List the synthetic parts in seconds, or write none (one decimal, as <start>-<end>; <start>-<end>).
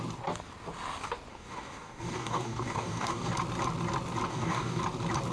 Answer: 1.3-3.3; 4.3-4.8